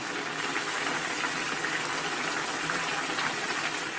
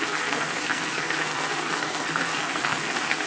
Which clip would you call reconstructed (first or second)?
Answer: second